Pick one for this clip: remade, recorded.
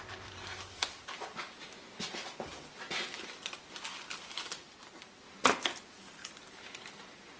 recorded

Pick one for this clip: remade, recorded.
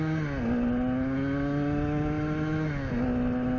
recorded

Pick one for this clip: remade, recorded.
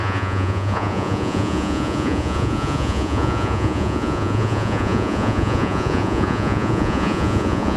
remade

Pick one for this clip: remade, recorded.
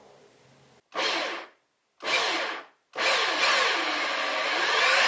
recorded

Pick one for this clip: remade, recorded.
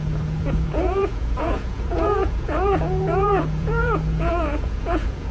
remade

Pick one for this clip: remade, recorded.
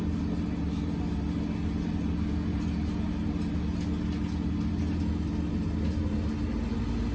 recorded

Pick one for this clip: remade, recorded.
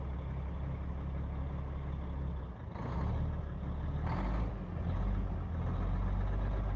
recorded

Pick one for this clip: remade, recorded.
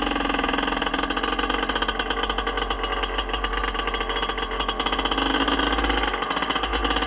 recorded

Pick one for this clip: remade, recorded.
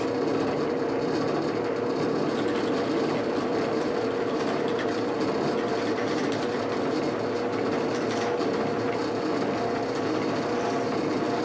recorded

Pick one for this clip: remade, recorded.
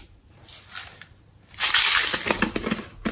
recorded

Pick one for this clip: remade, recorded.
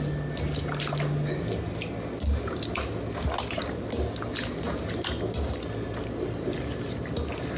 recorded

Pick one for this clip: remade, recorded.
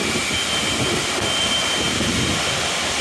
recorded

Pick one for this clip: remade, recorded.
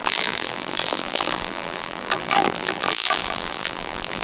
remade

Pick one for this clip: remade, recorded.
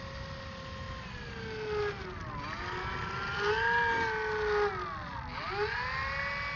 recorded